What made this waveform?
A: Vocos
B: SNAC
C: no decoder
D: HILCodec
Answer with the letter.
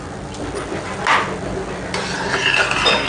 C